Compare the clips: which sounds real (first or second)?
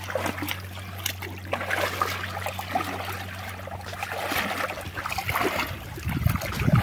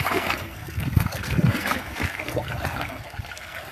first